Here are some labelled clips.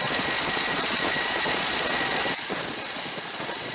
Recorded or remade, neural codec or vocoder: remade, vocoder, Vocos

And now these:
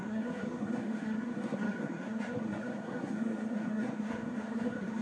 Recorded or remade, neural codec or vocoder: remade, codec, SNAC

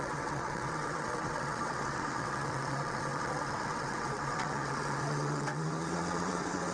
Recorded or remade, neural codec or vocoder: remade, vocoder, WaveNeXt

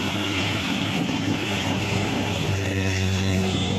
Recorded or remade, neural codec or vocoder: remade, codec, SNAC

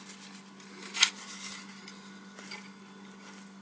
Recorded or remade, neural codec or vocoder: recorded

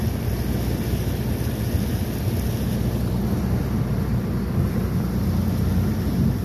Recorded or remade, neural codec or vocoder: recorded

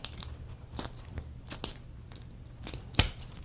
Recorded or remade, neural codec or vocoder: recorded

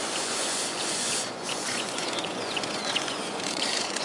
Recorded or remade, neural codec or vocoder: remade, vocoder, Vocos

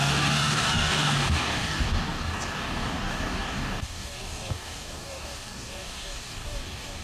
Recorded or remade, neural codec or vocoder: remade, codec, DAC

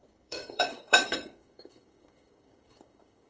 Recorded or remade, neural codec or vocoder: remade, codec, DAC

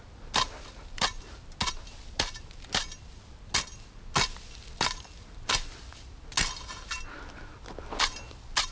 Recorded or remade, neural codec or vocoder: recorded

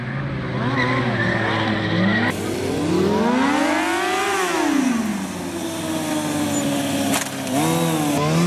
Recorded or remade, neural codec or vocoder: recorded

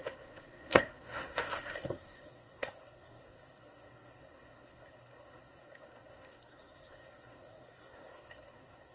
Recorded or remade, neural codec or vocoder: remade, codec, SNAC